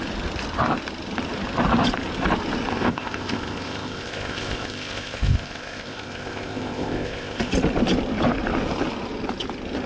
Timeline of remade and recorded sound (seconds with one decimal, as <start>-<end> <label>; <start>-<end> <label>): 0.0-2.7 recorded; 2.7-7.5 remade; 7.5-9.9 recorded